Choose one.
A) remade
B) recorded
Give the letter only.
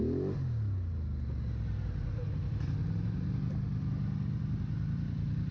B